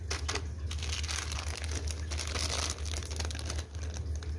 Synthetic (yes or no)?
no